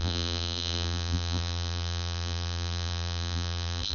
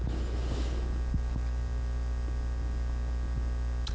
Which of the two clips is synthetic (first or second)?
first